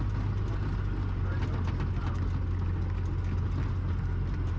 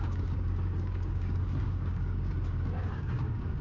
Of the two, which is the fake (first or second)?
second